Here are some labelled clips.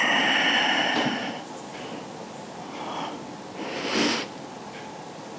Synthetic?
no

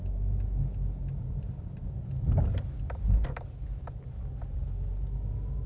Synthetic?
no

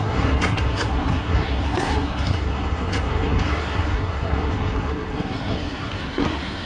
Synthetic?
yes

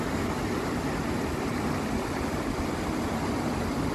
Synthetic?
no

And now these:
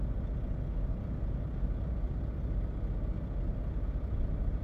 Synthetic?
no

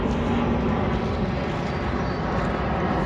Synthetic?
no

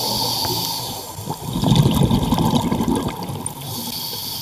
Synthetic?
no